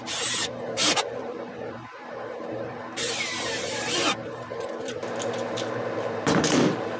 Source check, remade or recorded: remade